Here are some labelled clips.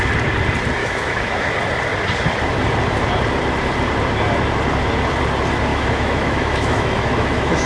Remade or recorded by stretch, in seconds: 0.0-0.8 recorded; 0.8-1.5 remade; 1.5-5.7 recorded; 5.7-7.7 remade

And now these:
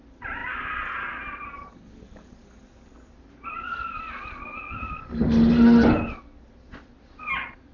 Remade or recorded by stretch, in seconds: 0.0-7.7 recorded

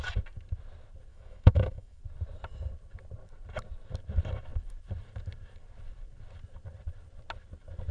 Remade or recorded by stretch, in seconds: 0.0-1.1 recorded; 1.1-2.0 remade; 2.0-7.9 recorded

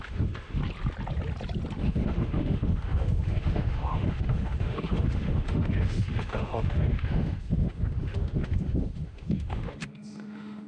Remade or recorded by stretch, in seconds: 0.0-0.6 remade; 0.6-1.8 recorded; 1.8-10.7 remade

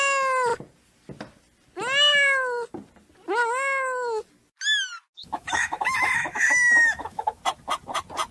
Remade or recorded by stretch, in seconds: 0.0-5.2 recorded; 5.2-7.4 remade; 7.4-8.3 recorded

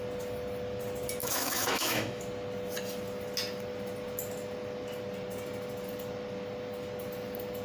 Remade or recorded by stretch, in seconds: 0.0-1.2 recorded; 1.2-2.2 remade; 2.2-7.6 recorded